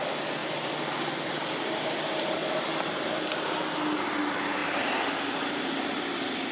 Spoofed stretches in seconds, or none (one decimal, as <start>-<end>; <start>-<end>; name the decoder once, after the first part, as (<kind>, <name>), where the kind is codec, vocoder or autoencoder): none